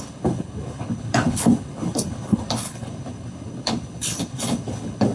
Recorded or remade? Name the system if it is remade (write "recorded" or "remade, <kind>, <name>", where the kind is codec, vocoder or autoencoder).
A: remade, codec, HILCodec